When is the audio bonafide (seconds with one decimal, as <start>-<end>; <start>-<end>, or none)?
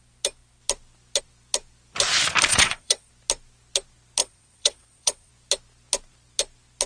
0.0-2.5; 3.1-4.2; 5.3-6.9